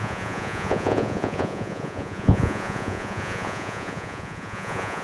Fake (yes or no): yes